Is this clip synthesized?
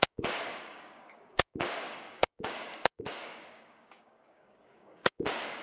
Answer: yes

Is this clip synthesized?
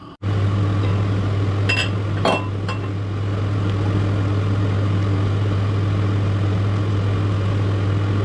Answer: no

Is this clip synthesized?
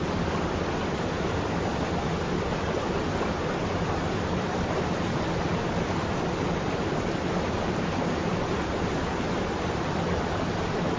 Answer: no